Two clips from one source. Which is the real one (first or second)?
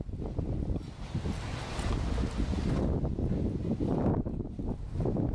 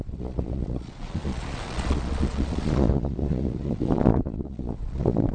first